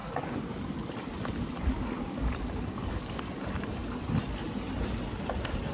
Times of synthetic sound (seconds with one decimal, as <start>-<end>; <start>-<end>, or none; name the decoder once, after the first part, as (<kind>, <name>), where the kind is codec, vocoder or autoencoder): 0.0-3.2 (codec, DAC)